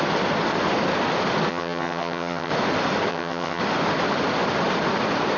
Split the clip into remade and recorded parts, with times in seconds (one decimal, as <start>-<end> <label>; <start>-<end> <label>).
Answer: 0.0-1.5 recorded; 1.5-2.5 remade; 2.5-3.1 recorded; 3.1-3.6 remade; 3.6-5.4 recorded

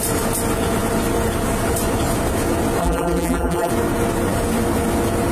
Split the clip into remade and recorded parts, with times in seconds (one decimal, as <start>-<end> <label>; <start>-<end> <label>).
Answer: 0.0-2.8 recorded; 2.8-3.7 remade; 3.7-5.3 recorded

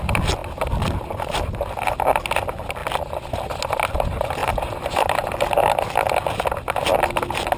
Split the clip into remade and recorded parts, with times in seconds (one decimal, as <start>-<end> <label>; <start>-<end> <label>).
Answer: 0.0-2.8 recorded; 2.8-3.6 remade; 3.6-4.4 recorded; 4.4-5.7 remade; 5.7-7.6 recorded

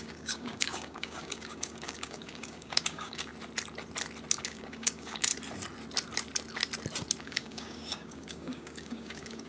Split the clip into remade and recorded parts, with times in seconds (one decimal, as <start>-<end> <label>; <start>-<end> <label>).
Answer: 0.0-3.3 remade; 3.3-4.4 recorded; 4.4-5.3 remade; 5.3-7.2 recorded; 7.2-9.5 remade

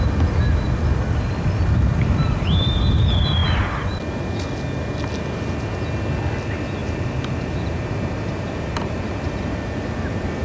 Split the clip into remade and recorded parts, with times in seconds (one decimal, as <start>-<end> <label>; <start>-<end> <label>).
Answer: 0.0-6.8 recorded; 6.8-9.6 remade; 9.6-10.4 recorded

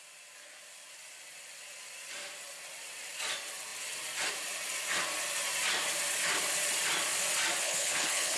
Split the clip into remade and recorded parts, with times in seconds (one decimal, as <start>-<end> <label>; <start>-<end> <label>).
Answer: 0.0-7.6 recorded; 7.6-8.4 remade

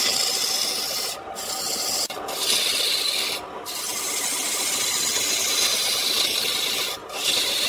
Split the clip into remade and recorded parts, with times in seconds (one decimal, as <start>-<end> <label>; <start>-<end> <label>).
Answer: 0.0-7.0 recorded; 7.0-7.7 remade